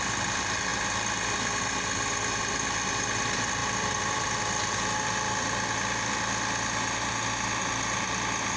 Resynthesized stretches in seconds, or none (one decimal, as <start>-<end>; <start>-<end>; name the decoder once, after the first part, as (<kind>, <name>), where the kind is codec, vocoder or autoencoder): 3.6-4.3 (vocoder, BigVGAN v2)